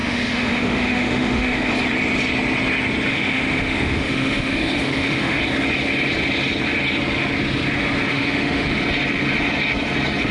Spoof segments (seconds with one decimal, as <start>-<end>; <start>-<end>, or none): 0.0-1.7; 3.1-5.4; 8.1-8.8